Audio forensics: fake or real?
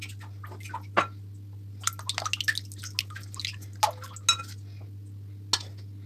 real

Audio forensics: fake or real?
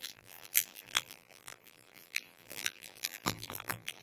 fake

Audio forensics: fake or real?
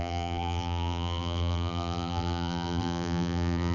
fake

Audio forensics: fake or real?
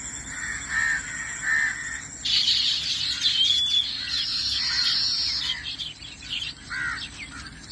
real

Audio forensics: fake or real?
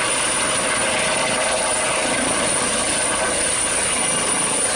real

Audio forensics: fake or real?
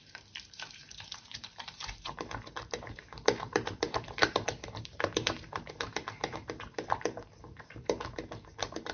fake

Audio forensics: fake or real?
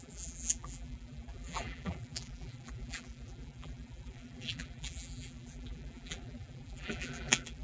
fake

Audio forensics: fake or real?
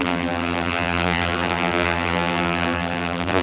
fake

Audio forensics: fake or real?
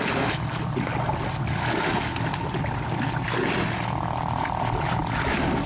real